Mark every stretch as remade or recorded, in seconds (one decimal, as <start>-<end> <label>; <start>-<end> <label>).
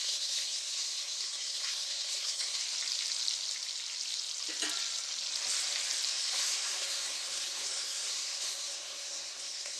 0.0-2.6 remade; 2.6-6.1 recorded; 6.1-9.8 remade